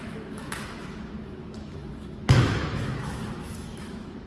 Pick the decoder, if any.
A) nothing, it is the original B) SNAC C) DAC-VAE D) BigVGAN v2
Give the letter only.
C